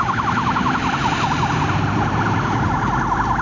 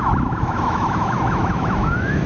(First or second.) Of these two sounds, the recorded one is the first